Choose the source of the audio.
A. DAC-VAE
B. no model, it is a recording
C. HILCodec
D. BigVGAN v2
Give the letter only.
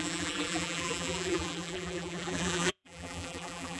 D